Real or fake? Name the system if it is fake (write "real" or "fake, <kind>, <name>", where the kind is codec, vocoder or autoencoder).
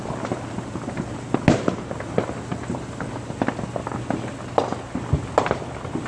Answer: real